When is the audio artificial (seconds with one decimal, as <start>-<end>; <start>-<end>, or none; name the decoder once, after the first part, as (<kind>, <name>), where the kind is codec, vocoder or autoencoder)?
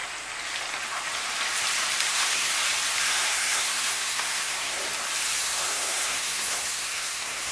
2.1-2.5 (codec, SNAC); 3.0-4.8; 5.4-7.5